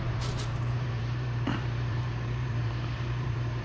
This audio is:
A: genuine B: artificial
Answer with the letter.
B